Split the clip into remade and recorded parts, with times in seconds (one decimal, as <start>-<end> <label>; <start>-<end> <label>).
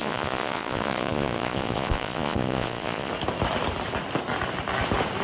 0.0-3.1 remade; 3.1-5.2 recorded